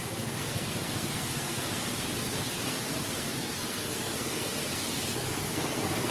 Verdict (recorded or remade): remade